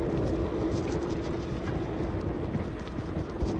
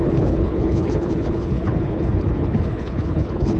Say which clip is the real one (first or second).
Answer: first